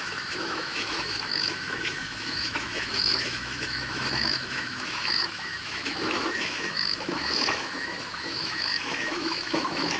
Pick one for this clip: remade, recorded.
remade